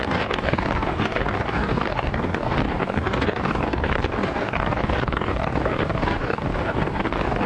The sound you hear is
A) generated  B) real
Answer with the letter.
A